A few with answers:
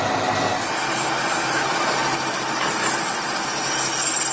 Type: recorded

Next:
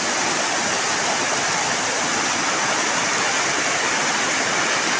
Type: recorded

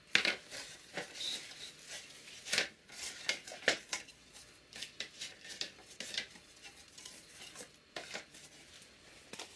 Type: recorded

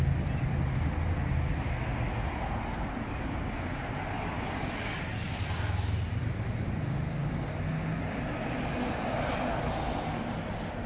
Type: recorded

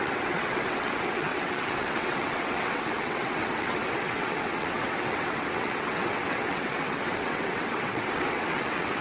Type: remade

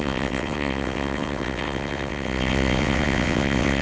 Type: remade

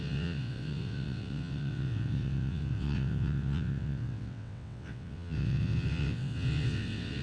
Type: remade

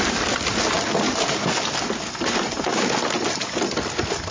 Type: recorded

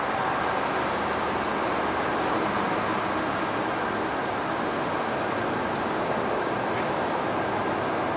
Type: recorded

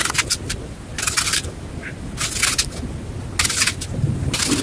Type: recorded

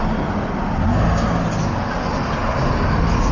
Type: recorded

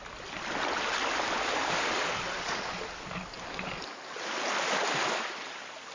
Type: recorded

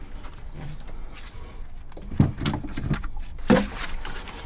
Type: recorded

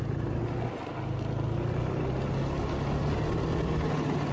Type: recorded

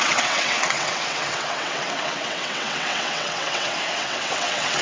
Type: remade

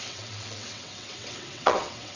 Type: remade